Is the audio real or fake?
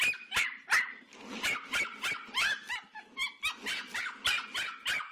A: real